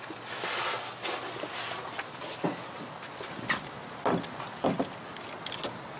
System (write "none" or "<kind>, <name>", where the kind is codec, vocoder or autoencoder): none